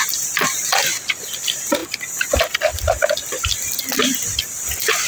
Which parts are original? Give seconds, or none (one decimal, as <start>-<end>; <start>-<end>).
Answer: 0.0-1.8; 2.8-5.1

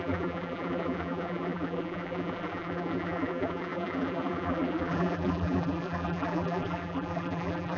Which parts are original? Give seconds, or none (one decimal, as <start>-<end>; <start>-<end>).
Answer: none

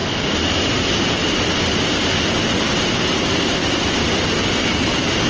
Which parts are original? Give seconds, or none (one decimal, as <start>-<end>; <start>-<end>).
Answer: 0.0-3.6; 4.1-5.3

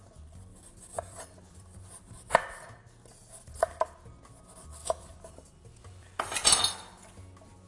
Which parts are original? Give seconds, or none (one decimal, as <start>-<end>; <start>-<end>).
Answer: 0.0-0.5; 1.9-4.8; 6.6-7.7